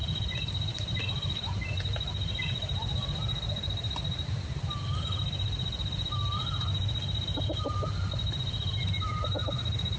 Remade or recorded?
remade